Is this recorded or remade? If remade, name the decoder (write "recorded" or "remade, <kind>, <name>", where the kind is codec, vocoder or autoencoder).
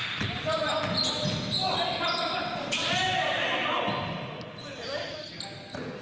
recorded